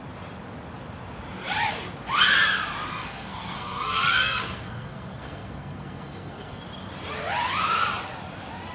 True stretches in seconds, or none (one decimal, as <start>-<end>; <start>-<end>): 0.0-3.0; 6.6-8.7